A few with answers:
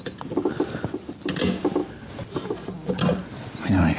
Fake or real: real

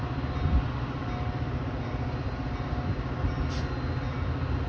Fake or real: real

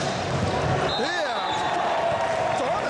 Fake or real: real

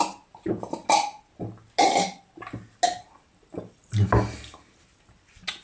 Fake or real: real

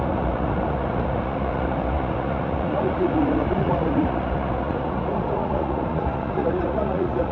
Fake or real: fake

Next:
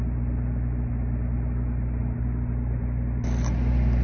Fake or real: real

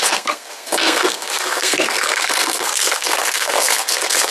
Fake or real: fake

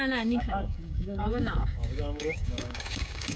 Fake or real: fake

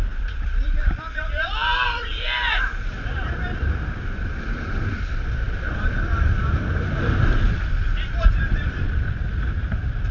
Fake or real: fake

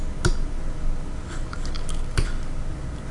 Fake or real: real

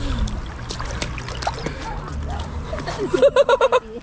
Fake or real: real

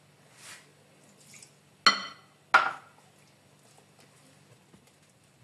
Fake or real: real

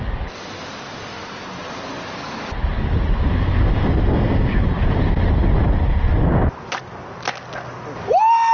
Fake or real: real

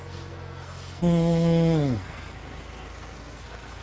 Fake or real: fake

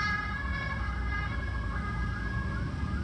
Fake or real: real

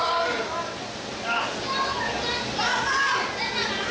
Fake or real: real